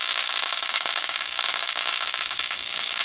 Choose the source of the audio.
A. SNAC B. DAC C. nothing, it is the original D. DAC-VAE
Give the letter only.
B